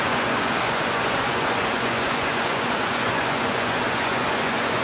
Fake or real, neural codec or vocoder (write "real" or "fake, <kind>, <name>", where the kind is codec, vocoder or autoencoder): fake, vocoder, Vocos